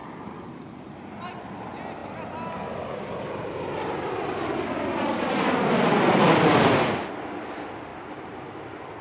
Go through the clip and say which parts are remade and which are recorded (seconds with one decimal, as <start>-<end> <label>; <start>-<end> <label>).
0.0-1.4 remade; 1.4-7.9 recorded; 7.9-9.0 remade